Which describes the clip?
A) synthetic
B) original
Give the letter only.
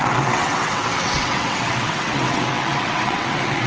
A